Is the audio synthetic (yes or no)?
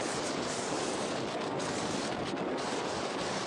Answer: yes